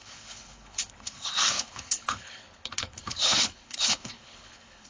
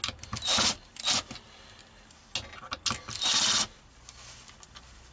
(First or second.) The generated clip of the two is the first